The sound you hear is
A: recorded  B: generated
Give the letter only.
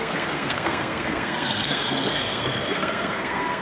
B